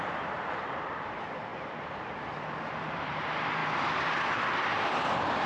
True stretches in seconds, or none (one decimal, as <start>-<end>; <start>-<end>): 1.5-2.7; 3.6-4.5